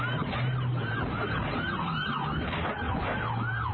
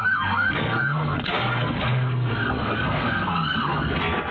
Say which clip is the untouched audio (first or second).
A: first